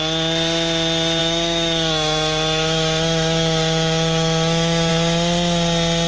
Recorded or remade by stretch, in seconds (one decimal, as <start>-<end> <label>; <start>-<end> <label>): 0.0-1.2 recorded; 1.2-4.9 remade; 4.9-6.1 recorded